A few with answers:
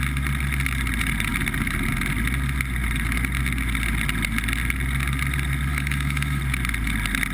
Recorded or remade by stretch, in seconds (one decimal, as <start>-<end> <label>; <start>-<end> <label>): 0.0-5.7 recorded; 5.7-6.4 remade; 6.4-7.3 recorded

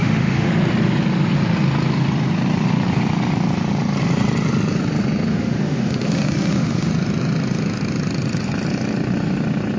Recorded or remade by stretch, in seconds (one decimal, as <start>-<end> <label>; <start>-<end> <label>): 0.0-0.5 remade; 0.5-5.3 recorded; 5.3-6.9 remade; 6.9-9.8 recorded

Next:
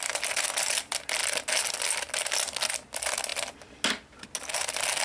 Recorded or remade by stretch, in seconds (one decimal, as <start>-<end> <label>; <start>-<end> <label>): 0.0-5.0 recorded

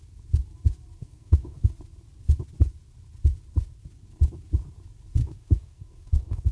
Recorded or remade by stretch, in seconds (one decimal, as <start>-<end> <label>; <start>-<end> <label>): 0.0-1.0 recorded; 1.0-1.7 remade; 1.7-5.2 recorded; 5.2-6.5 remade